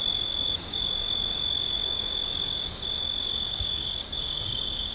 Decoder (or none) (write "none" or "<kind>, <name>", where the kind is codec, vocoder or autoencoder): codec, DAC